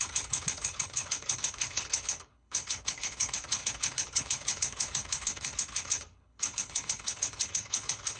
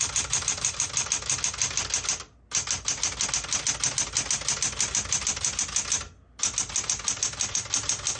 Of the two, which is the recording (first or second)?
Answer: second